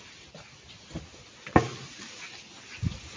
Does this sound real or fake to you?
real